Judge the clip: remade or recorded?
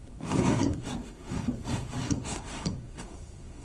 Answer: remade